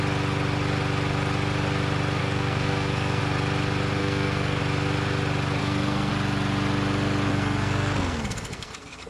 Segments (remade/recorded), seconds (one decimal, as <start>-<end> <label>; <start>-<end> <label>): 0.0-2.2 recorded; 2.2-3.2 remade; 3.2-4.0 recorded; 4.0-4.6 remade; 4.6-5.6 recorded; 5.6-6.1 remade; 6.1-7.3 recorded; 7.3-9.1 remade

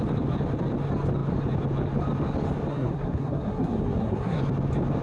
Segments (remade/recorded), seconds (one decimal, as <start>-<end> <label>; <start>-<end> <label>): 0.0-2.7 recorded; 2.7-4.4 remade; 4.4-5.0 recorded

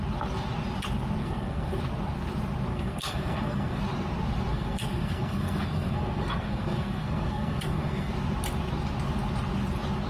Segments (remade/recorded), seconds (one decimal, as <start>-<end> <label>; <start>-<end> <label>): 0.0-1.2 recorded; 1.2-1.8 remade; 1.8-2.7 recorded; 2.7-3.8 remade; 3.8-4.5 recorded; 4.5-8.1 remade; 8.1-10.1 recorded

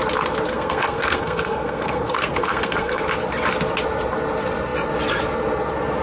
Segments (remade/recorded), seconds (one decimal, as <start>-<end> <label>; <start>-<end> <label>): 0.0-0.5 recorded; 0.5-3.0 remade; 3.0-6.0 recorded

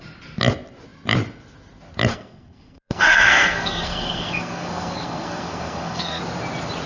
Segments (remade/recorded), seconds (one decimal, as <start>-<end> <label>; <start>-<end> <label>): 0.0-2.1 recorded; 2.1-6.2 remade; 6.2-6.9 recorded

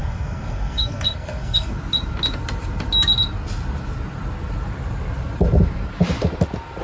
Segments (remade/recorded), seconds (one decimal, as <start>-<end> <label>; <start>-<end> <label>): 0.0-1.7 remade; 1.7-6.8 recorded